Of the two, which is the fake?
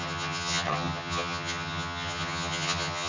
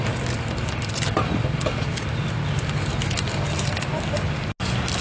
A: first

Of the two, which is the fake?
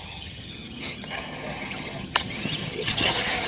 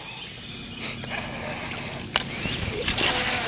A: first